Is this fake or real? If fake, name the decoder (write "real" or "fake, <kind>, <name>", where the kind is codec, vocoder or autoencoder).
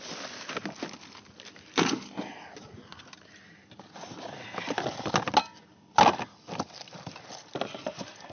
real